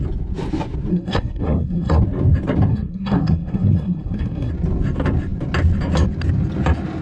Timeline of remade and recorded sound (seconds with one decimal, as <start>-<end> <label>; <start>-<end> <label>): 0.0-0.9 recorded; 0.9-2.0 remade; 2.0-2.7 recorded; 2.7-4.5 remade; 4.5-7.0 recorded